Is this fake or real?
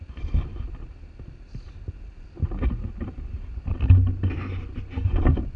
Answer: real